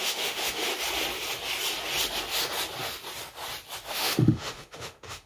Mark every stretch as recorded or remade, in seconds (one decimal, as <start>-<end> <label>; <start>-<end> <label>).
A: 0.0-0.7 remade; 0.7-3.9 recorded; 3.9-5.3 remade